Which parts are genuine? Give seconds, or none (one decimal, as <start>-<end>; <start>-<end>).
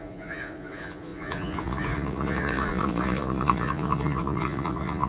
none